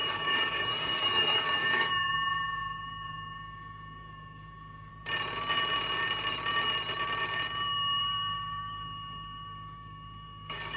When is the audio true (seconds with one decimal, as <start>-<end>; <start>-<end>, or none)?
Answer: 4.9-8.0